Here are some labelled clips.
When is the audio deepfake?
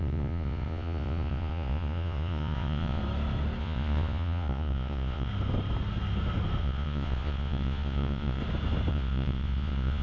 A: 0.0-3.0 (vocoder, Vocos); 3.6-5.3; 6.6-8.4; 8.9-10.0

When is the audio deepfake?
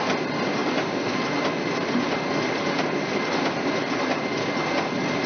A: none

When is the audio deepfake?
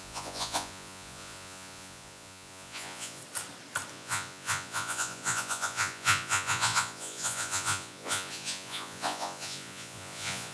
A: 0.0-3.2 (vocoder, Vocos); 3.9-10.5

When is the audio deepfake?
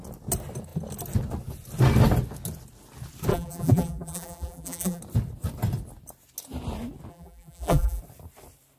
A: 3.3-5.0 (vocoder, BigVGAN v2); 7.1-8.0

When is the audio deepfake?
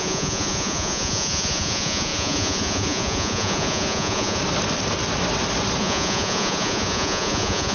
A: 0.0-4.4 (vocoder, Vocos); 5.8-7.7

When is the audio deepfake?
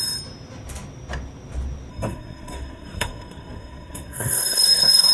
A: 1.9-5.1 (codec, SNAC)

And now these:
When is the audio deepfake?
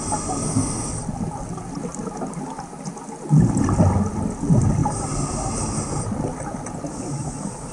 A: none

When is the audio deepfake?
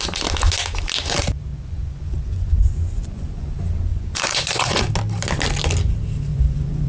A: 1.5-3.5 (vocoder, Vocos); 3.9-4.9; 6.3-6.9